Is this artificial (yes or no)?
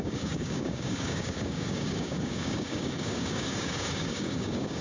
yes